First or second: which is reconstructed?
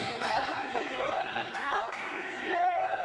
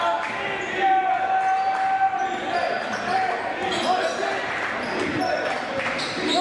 first